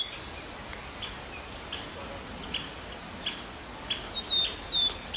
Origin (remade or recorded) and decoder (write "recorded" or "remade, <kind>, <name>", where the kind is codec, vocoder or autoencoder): recorded